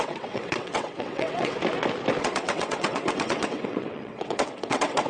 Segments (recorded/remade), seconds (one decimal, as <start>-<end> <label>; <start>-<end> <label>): 0.0-1.6 remade; 1.6-2.2 recorded; 2.2-5.1 remade